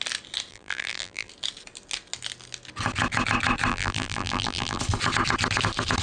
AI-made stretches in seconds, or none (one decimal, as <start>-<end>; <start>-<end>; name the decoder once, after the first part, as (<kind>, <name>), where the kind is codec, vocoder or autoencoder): 0.5-1.3 (vocoder, BigVGAN v2); 3.7-4.8